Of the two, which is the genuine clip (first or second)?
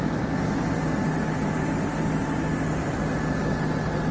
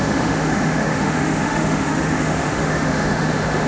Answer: first